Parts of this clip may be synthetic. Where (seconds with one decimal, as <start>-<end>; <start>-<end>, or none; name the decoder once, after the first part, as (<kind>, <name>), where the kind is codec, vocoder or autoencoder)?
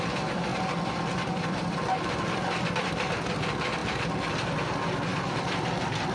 0.5-2.7 (vocoder, BigVGAN v2); 3.8-4.3; 5.1-6.1